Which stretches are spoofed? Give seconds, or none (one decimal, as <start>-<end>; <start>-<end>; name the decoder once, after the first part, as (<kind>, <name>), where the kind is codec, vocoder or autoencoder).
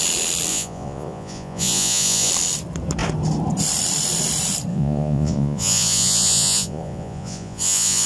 0.5-2.3 (vocoder, Vocos); 4.7-8.1